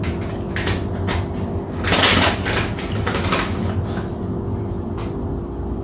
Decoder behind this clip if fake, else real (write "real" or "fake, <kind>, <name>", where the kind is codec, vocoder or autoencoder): real